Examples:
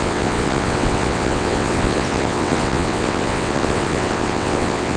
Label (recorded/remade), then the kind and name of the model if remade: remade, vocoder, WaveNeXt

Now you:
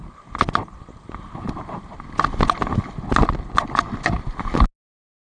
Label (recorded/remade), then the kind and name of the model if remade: recorded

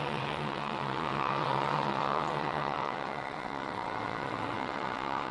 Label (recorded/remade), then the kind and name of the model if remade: remade, vocoder, WaveNeXt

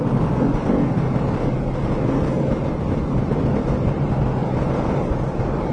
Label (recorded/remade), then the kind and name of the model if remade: recorded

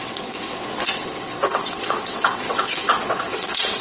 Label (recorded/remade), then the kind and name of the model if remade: remade, vocoder, WaveNeXt